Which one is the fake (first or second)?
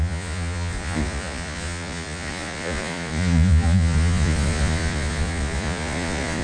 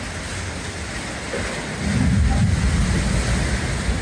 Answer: first